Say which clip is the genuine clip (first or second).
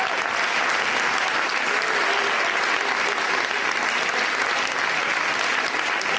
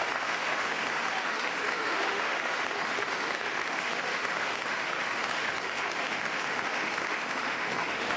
first